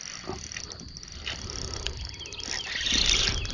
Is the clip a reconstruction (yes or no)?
no